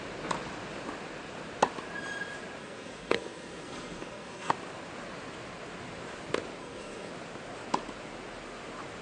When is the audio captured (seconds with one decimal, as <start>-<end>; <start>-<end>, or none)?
0.0-2.6; 4.5-6.6; 7.1-9.0